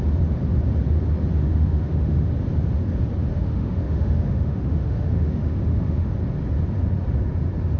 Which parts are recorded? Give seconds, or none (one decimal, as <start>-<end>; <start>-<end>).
0.0-1.4; 2.3-3.3; 6.1-7.8